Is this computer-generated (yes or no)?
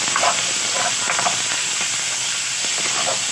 no